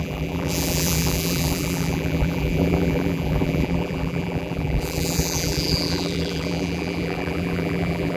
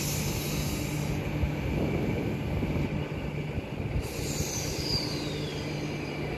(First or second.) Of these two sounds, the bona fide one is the second